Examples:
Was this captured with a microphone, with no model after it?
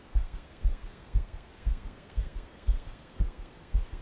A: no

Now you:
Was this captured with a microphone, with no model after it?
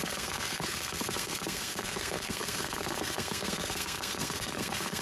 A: no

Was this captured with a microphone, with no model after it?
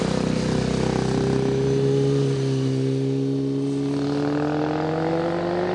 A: yes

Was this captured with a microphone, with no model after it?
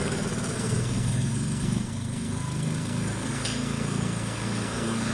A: no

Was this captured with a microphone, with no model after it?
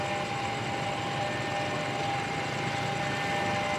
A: yes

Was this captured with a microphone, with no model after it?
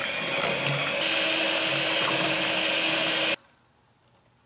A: yes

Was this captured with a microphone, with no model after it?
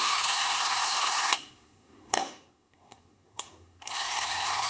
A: no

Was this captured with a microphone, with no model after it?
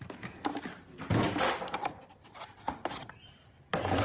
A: yes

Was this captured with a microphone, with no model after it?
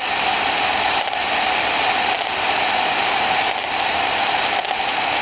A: yes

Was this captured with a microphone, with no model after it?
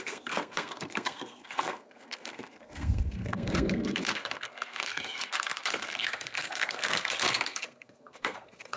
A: no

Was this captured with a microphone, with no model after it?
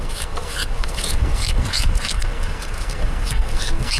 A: no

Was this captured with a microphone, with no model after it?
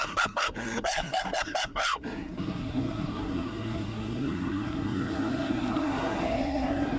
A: no